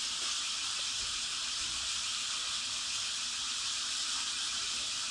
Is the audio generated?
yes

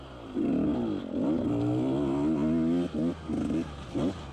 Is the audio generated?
no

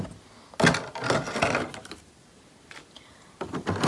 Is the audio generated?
no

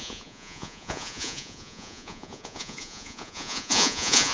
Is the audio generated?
yes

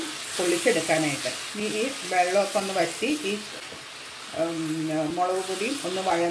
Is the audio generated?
no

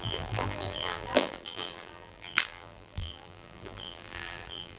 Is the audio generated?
yes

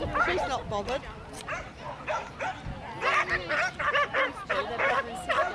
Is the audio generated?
no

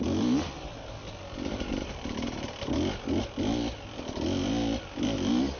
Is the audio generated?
no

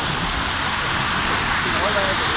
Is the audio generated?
no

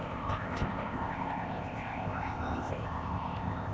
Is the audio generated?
yes